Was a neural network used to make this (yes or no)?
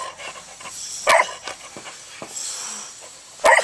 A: no